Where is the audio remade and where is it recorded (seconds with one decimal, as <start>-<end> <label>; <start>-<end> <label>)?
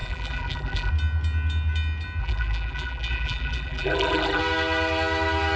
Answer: 0.0-0.9 remade; 0.9-2.2 recorded; 2.2-4.4 remade; 4.4-5.6 recorded